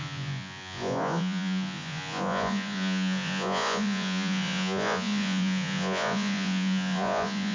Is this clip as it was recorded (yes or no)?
no